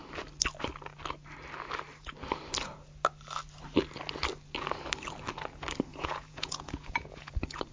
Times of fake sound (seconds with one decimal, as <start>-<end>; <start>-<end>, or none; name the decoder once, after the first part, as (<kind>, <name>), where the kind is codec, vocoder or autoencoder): 5.9-7.3 (vocoder, Vocos)

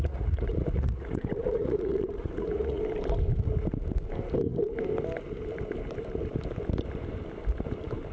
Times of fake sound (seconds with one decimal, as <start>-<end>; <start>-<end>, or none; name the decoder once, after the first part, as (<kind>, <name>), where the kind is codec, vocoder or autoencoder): 0.0-2.8 (vocoder, Vocos)